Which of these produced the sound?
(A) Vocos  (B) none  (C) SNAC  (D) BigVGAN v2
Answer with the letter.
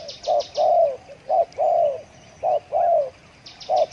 B